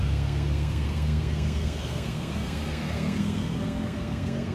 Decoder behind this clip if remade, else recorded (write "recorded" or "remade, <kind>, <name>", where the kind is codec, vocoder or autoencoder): remade, codec, SNAC